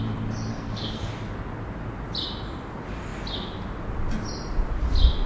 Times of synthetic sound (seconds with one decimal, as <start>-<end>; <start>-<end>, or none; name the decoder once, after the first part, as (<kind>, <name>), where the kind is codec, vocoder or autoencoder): 0.5-1.1 (codec, SNAC)

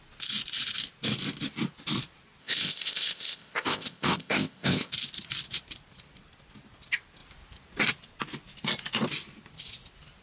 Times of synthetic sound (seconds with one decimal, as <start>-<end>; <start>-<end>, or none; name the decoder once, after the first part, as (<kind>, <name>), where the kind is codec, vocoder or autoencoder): 2.4-4.9 (codec, ZipCodec)

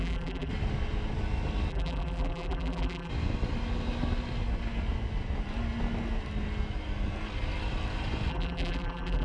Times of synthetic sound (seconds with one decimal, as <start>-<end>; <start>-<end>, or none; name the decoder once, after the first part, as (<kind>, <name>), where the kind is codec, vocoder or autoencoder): 0.0-0.5 (vocoder, BigVGAN v2); 1.7-3.1; 8.3-9.2